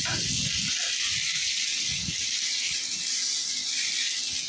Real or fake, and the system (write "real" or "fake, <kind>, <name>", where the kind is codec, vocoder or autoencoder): real